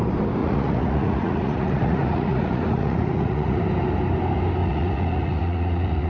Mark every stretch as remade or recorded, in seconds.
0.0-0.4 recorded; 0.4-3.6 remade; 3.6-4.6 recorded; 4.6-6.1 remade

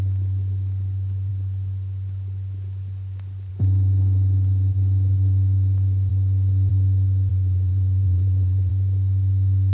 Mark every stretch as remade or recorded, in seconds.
0.0-7.3 recorded; 7.3-8.7 remade; 8.7-9.7 recorded

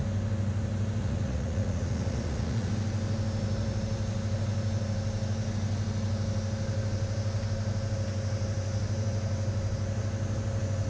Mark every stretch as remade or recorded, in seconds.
0.0-1.0 recorded; 1.0-2.7 remade; 2.7-10.9 recorded

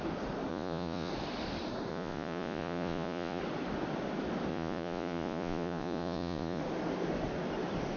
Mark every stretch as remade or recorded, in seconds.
0.0-0.5 recorded; 0.5-1.1 remade; 1.1-1.9 recorded; 1.9-3.4 remade; 3.4-4.5 recorded; 4.5-6.6 remade; 6.6-8.0 recorded

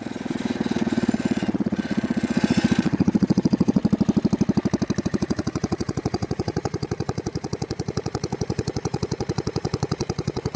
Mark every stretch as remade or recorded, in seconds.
0.0-3.8 remade; 3.8-5.0 recorded; 5.0-10.6 remade

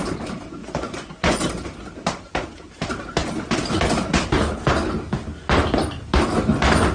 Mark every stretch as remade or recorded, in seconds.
0.0-0.6 recorded; 0.6-1.4 remade; 1.4-6.9 recorded

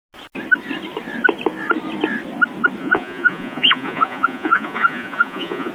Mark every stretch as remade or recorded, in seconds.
0.0-2.8 recorded; 2.8-5.7 remade

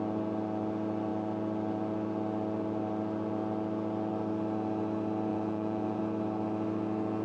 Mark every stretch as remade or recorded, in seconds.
0.0-5.3 recorded; 5.3-6.0 remade; 6.0-7.2 recorded